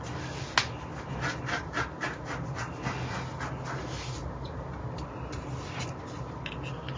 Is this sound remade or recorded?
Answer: recorded